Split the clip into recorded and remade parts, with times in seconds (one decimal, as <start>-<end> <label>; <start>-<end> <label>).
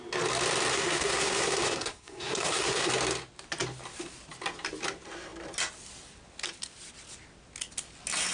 0.0-0.7 recorded; 0.7-2.9 remade; 2.9-8.3 recorded